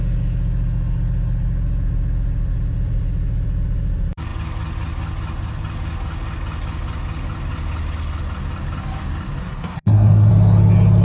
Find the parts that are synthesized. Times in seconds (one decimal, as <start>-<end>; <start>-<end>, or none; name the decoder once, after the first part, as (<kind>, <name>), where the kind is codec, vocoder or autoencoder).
9.4-10.3 (codec, SNAC)

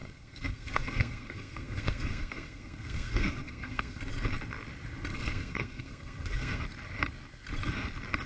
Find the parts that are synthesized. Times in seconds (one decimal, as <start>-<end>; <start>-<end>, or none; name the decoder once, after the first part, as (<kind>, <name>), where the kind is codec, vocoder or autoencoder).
0.0-4.0 (codec, SNAC); 5.1-6.6